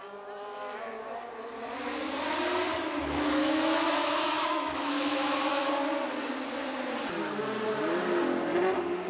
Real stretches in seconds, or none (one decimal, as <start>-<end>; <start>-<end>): 0.0-2.7; 5.7-9.1